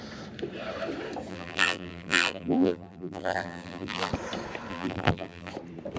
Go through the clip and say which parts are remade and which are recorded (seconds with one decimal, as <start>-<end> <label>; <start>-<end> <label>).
0.0-1.3 recorded; 1.3-4.1 remade; 4.1-4.7 recorded; 4.7-5.5 remade; 5.5-6.0 recorded

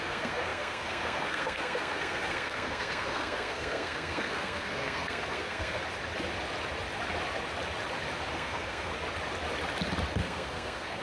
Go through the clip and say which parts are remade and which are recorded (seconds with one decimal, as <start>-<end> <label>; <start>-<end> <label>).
0.0-5.8 remade; 5.8-8.3 recorded; 8.3-8.9 remade; 8.9-10.2 recorded; 10.2-11.0 remade

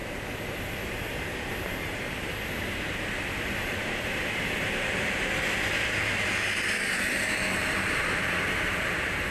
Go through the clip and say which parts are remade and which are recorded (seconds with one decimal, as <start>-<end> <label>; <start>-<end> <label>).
0.0-1.8 recorded; 1.8-2.3 remade; 2.3-3.2 recorded; 3.2-9.3 remade

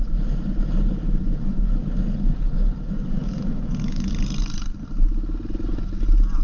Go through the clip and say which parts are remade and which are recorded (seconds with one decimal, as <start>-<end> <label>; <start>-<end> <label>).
0.0-3.2 recorded; 3.2-4.1 remade; 4.1-6.4 recorded

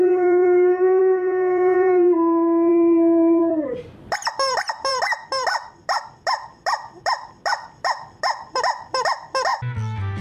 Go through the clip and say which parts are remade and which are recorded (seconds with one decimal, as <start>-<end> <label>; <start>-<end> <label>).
0.0-9.5 remade; 9.5-10.2 recorded